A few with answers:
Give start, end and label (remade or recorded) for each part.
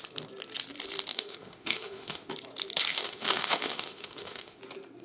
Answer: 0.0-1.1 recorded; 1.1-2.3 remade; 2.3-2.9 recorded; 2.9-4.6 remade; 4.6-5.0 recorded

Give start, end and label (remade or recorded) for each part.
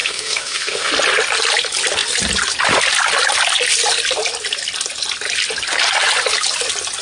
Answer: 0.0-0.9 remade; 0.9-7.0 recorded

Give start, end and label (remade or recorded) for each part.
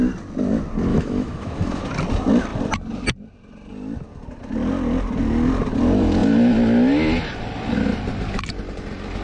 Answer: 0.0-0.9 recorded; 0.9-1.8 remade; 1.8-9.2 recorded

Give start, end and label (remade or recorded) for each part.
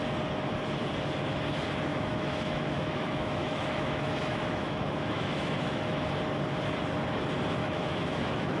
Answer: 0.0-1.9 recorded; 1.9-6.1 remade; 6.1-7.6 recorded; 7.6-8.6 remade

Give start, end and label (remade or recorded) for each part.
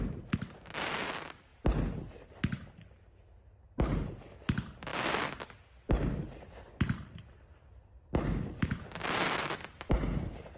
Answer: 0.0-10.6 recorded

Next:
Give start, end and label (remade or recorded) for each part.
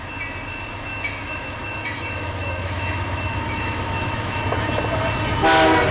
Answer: 0.0-0.9 recorded; 0.9-4.4 remade; 4.4-5.9 recorded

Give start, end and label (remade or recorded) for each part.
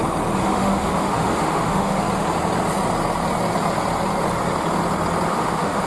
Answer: 0.0-0.4 recorded; 0.4-2.0 remade; 2.0-5.3 recorded; 5.3-5.9 remade